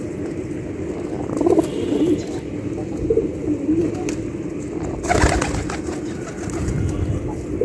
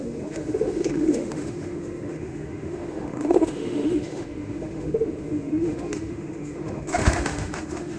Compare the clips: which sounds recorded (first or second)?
first